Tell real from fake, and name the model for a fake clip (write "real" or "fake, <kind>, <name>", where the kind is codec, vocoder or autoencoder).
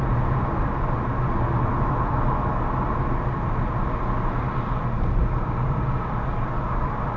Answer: real